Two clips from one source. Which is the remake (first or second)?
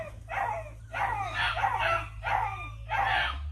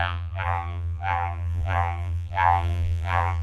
second